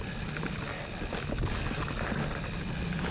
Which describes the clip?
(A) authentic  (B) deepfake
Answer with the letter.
A